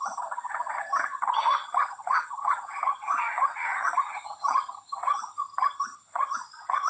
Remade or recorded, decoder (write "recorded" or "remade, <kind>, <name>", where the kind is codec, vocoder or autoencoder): remade, vocoder, HiFi-GAN